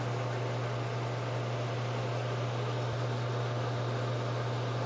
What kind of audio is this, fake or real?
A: real